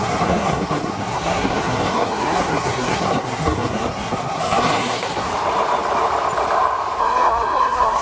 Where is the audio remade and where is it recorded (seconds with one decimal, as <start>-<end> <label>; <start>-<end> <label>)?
0.0-5.3 remade; 5.3-7.0 recorded; 7.0-8.0 remade

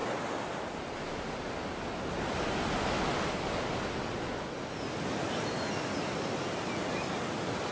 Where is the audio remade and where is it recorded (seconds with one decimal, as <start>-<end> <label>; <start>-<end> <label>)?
0.0-7.7 recorded

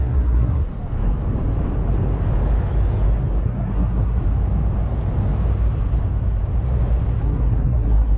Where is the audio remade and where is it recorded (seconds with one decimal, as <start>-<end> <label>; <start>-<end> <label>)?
0.0-0.7 remade; 0.7-3.4 recorded; 3.4-4.2 remade; 4.2-7.2 recorded; 7.2-8.2 remade

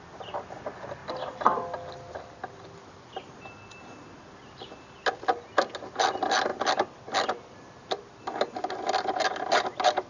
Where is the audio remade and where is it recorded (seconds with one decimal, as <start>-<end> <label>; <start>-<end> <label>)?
0.0-10.1 recorded

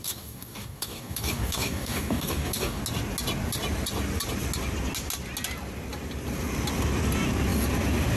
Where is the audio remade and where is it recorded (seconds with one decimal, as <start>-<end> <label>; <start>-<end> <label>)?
0.0-2.8 remade; 2.8-8.2 recorded

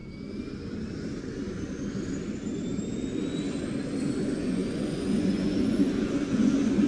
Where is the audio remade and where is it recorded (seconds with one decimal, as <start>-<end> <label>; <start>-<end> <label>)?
0.0-4.1 recorded; 4.1-6.9 remade

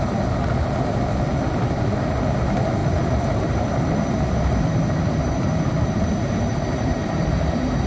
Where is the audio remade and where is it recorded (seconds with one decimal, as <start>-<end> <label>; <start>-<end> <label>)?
0.0-2.8 recorded; 2.8-7.5 remade; 7.5-7.9 recorded